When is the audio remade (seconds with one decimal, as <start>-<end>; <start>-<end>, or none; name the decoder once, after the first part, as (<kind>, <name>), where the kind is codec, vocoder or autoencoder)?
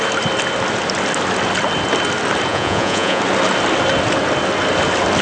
2.5-3.2 (vocoder, Vocos)